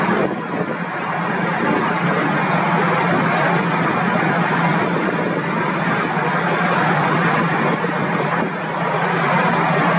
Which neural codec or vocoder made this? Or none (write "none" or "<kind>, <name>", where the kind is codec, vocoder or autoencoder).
none